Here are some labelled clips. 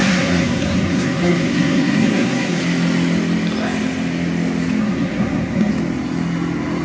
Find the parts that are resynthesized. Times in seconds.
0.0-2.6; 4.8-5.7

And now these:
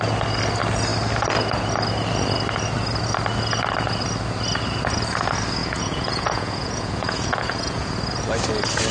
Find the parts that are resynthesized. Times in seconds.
5.6-7.9

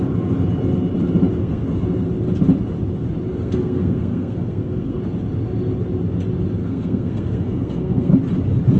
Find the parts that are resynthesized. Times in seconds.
1.4-2.1; 3.3-5.0; 6.6-8.1

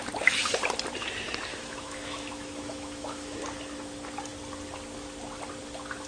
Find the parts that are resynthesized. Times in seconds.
1.5-3.4

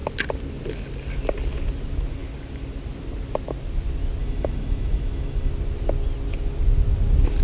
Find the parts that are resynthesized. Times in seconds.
4.2-5.5

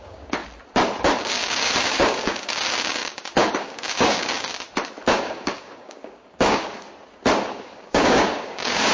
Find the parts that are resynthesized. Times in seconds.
0.0-0.4; 1.2-4.5; 5.1-6.9; 7.5-8.9

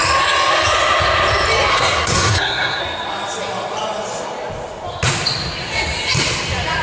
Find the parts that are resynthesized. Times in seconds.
1.7-2.8

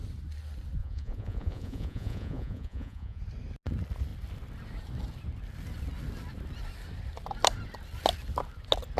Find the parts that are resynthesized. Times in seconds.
0.8-3.2